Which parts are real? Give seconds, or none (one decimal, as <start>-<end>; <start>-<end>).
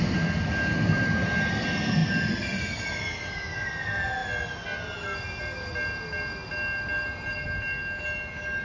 0.0-8.6